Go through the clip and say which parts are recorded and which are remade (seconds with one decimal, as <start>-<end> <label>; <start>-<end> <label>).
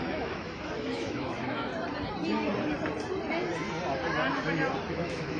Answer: 0.0-1.7 remade; 1.7-4.9 recorded; 4.9-5.4 remade